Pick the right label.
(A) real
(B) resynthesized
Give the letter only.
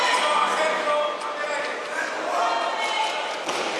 A